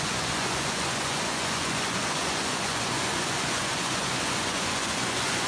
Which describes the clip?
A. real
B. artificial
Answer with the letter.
B